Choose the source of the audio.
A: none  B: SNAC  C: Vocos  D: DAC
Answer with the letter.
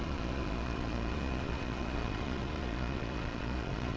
C